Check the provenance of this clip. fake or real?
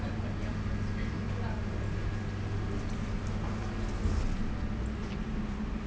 real